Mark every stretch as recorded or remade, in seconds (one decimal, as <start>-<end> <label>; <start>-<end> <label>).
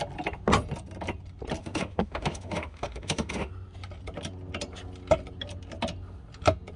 0.0-1.6 recorded; 1.6-3.5 remade; 3.5-6.8 recorded